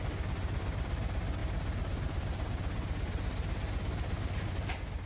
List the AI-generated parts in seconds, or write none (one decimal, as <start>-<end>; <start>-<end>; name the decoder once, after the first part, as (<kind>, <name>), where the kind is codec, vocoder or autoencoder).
none